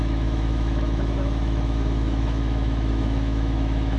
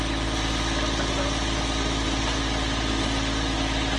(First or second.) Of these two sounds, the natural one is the second